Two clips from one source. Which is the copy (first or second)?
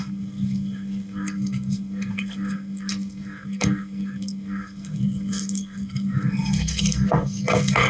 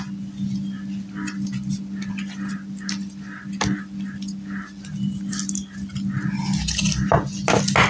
first